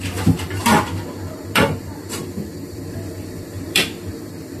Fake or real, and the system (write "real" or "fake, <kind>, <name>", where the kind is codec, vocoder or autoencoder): fake, vocoder, BigVGAN v2